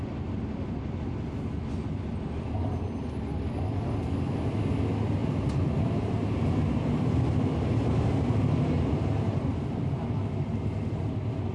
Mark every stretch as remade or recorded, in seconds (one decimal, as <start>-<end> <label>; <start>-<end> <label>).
0.0-5.2 recorded; 5.2-9.4 remade; 9.4-11.5 recorded